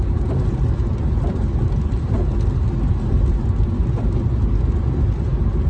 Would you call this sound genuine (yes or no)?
yes